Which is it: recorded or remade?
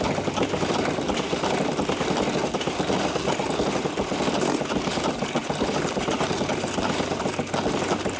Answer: recorded